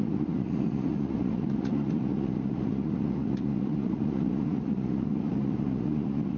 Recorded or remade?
remade